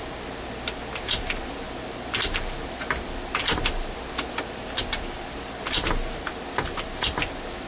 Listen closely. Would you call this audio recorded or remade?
recorded